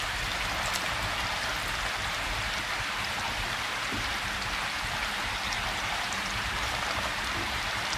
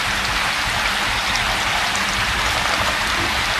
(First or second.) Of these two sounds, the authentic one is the second